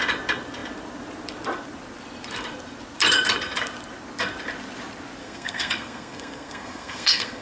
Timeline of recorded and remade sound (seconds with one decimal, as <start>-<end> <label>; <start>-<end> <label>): 0.0-5.2 recorded; 5.2-7.4 remade